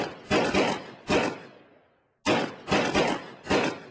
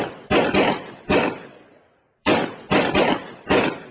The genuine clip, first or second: first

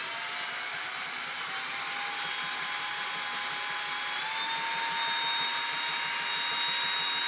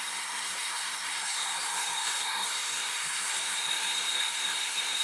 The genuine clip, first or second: first